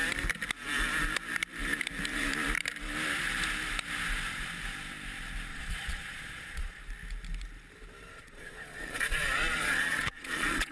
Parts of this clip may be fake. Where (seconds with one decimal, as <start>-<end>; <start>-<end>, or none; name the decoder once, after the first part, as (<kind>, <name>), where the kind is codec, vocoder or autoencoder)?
5.5-6.8 (vocoder, Vocos); 8.1-10.7